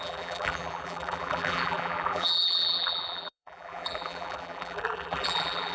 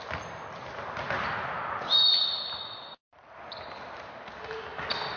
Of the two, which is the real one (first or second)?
second